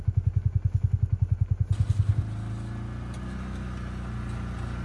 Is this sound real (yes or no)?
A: yes